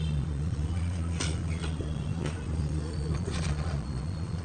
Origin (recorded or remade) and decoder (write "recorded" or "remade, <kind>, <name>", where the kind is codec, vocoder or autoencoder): remade, vocoder, Vocos